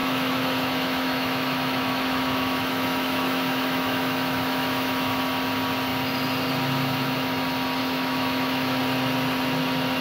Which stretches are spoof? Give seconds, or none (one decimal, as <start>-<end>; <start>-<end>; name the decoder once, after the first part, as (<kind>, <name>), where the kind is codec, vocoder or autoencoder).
0.0-5.2 (autoencoder, DAC-VAE); 7.8-8.8